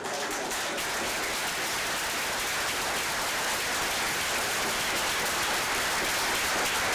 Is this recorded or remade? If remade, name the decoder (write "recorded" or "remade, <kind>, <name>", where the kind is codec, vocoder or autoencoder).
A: recorded